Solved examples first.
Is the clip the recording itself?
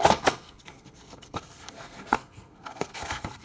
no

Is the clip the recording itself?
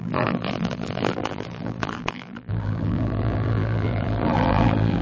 no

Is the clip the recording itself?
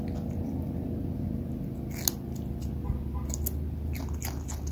yes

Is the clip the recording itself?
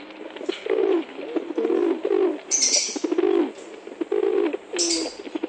yes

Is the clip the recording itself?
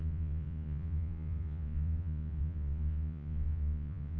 no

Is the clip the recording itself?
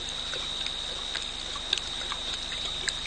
yes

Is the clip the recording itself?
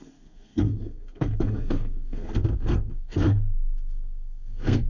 no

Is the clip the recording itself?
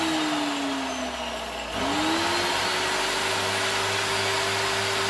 yes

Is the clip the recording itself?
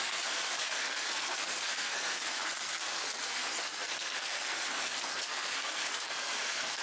no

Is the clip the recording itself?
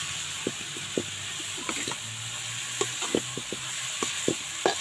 yes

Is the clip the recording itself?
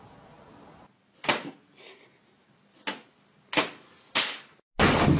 yes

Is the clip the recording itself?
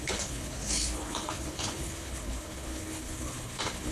no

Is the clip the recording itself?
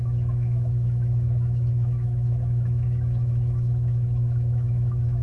no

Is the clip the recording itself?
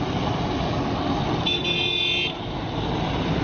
yes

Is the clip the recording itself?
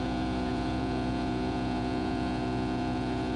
no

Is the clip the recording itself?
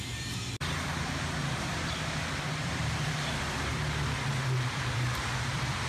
no